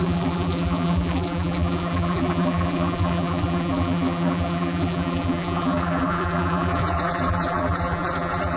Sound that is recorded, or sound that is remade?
remade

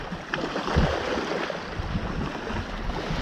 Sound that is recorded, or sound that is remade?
recorded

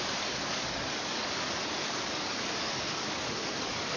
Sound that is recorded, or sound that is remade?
remade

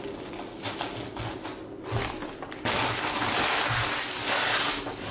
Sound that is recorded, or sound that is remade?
recorded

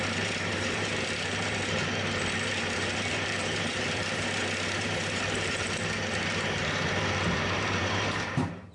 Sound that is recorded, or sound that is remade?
remade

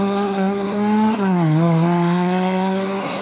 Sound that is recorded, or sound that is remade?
remade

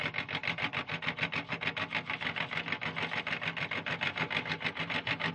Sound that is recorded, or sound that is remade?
recorded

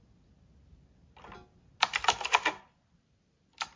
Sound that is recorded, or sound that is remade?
recorded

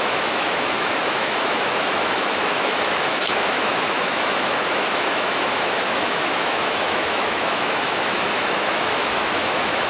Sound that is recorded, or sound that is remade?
remade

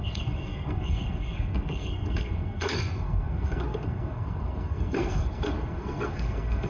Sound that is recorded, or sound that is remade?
remade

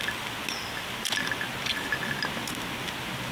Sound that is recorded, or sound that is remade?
recorded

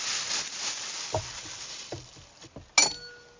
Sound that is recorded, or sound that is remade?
recorded